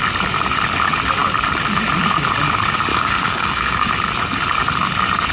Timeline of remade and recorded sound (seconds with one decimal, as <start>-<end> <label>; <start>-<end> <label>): 0.0-2.9 recorded; 2.9-3.9 remade; 3.9-5.3 recorded